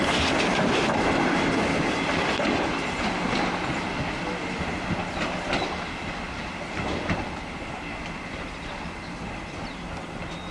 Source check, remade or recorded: recorded